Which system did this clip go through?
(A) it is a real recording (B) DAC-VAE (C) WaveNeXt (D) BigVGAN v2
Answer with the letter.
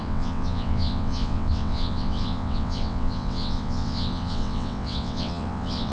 C